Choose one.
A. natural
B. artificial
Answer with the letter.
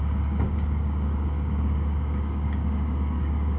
B